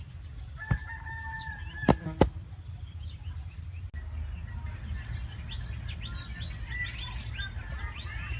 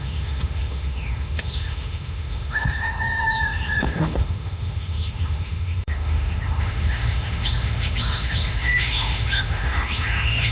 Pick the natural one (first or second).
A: first